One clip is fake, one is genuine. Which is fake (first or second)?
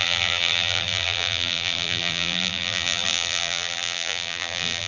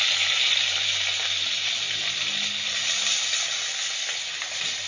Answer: first